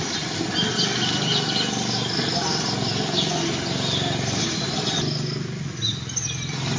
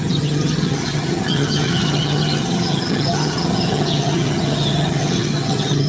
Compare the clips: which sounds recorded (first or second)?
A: first